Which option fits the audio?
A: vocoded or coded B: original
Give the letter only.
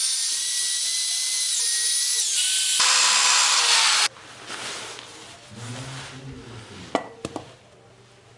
B